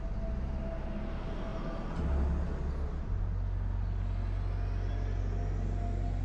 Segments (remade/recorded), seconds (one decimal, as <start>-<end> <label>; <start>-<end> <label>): 0.0-6.2 recorded